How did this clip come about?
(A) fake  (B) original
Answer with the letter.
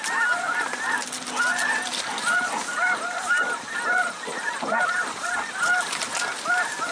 B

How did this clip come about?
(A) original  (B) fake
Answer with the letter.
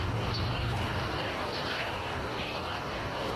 B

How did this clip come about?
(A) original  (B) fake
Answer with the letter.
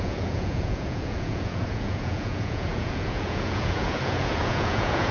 B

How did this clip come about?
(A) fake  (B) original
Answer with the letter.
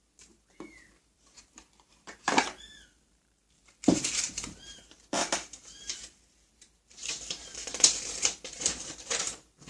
A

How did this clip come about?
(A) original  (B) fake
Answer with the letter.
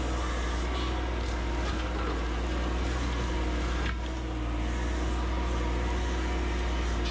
A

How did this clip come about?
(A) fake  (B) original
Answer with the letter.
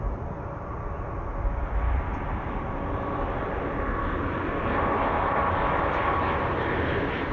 B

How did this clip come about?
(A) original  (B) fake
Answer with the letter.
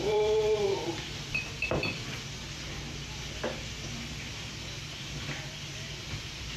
B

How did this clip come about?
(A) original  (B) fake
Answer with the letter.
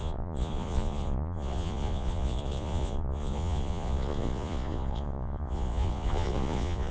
B